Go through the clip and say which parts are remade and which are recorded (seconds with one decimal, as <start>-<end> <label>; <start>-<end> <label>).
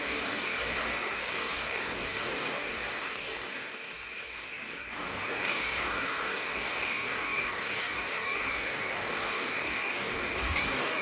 0.0-11.0 remade